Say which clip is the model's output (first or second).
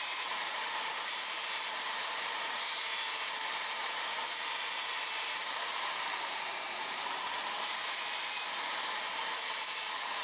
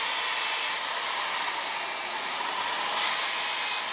first